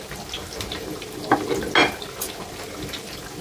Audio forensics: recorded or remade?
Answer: recorded